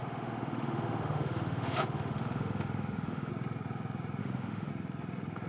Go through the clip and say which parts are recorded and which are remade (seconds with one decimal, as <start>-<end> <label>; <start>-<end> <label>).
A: 0.0-3.3 remade; 3.3-4.2 recorded; 4.2-4.7 remade; 4.7-5.5 recorded